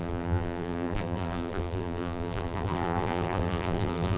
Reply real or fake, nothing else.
fake